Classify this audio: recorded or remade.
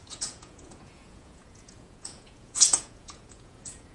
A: remade